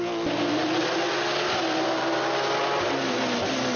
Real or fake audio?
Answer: real